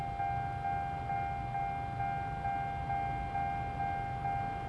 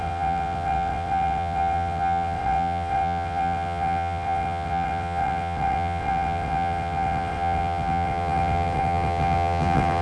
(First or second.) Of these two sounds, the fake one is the second